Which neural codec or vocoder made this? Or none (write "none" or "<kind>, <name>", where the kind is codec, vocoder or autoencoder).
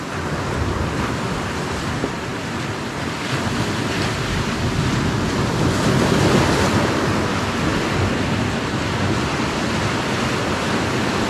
none